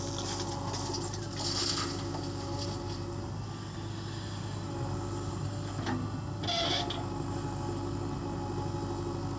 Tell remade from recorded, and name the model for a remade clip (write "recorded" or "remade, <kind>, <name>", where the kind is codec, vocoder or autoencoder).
recorded